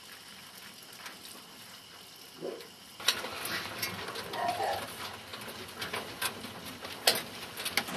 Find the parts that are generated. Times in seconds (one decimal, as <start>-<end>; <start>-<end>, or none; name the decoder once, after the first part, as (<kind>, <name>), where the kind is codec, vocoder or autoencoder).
none